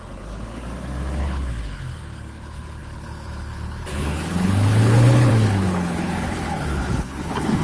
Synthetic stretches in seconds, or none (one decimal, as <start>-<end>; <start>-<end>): 0.0-0.6; 1.2-7.6